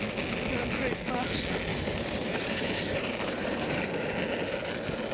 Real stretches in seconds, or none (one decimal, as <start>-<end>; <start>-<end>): 0.0-1.7; 3.8-5.1